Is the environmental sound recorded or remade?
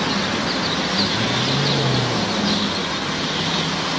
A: recorded